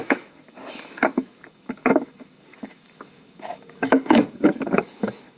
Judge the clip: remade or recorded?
remade